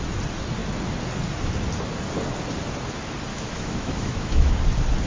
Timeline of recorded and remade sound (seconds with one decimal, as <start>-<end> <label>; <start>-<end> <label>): 0.0-3.3 recorded; 3.3-4.6 remade; 4.6-5.1 recorded